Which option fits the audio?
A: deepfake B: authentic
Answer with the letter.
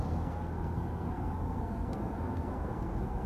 A